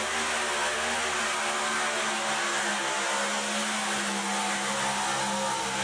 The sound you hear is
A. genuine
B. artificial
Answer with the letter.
A